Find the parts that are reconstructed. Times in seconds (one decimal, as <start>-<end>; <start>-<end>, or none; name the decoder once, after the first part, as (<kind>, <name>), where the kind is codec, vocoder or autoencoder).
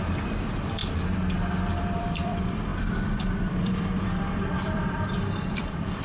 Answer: 0.0-0.8 (vocoder, BigVGAN v2); 1.7-6.0